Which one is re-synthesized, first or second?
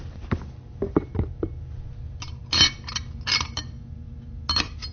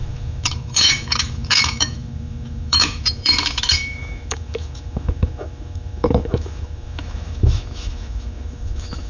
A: second